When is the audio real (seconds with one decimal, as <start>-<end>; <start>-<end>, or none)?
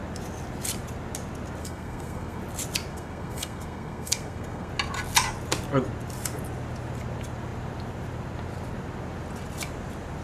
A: 0.0-1.6; 2.4-2.9; 4.7-10.2